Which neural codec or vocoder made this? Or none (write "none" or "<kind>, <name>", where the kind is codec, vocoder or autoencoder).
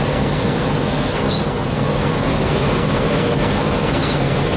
codec, SNAC